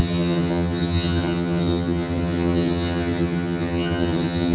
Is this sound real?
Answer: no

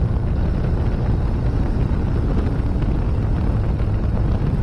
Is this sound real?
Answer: yes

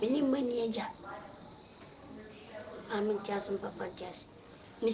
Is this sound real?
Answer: yes